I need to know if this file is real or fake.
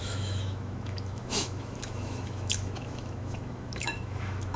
fake